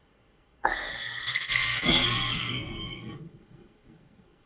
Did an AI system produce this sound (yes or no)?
yes